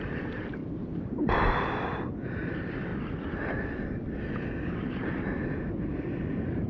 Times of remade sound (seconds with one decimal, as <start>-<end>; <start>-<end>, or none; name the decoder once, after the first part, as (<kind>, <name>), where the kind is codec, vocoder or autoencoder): 0.0-2.9 (vocoder, BigVGAN v2); 5.7-6.7